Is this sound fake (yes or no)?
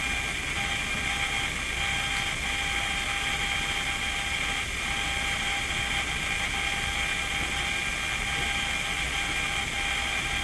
no